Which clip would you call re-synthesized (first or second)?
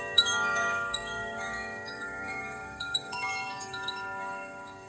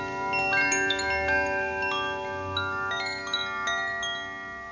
first